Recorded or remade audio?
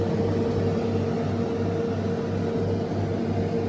recorded